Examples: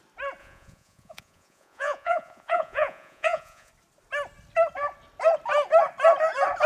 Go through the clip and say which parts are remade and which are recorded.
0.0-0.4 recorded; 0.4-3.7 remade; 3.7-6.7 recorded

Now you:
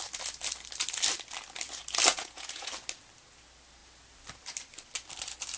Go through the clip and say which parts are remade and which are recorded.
0.0-2.1 recorded; 2.1-2.7 remade; 2.7-5.6 recorded

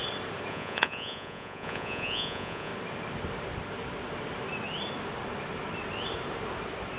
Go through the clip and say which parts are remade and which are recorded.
0.0-0.5 recorded; 0.5-2.7 remade; 2.7-7.0 recorded